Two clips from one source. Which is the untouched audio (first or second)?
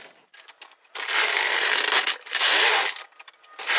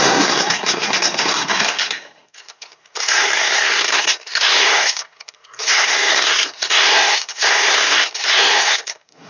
first